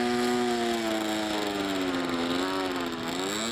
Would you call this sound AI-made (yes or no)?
no